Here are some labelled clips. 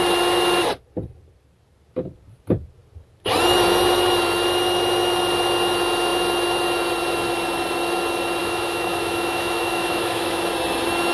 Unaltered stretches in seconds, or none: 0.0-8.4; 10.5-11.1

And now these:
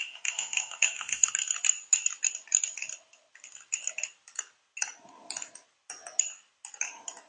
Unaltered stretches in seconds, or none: 1.3-7.3

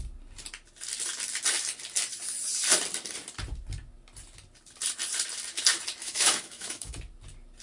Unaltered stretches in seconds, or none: 0.0-6.0; 7.0-7.6

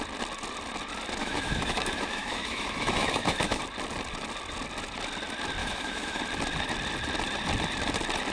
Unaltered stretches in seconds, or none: 0.0-1.2; 3.6-5.6; 6.2-8.3

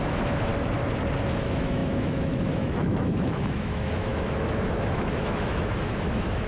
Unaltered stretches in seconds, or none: 0.5-1.4

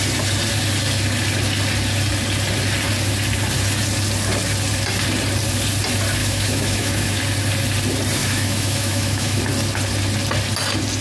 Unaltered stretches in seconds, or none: 0.0-6.2; 7.2-8.2; 9.4-11.0